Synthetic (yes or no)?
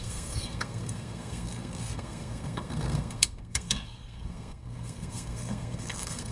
yes